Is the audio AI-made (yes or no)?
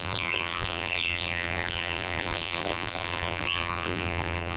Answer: yes